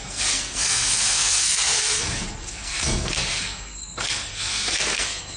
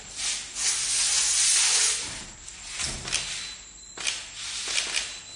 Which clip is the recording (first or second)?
second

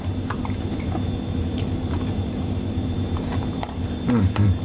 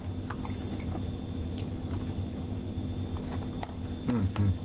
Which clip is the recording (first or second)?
second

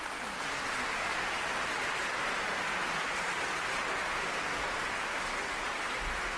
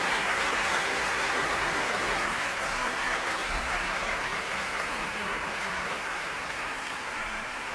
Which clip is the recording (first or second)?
first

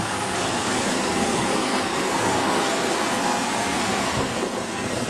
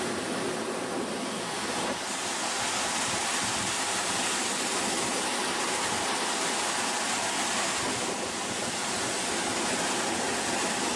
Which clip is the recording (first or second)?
second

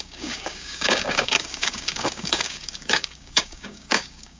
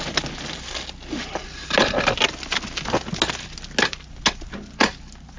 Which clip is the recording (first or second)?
second